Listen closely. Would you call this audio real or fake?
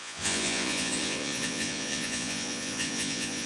fake